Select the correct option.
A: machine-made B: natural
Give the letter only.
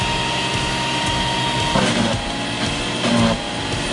B